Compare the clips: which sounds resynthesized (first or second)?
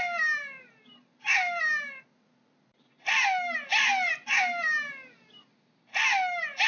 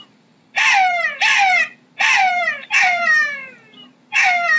second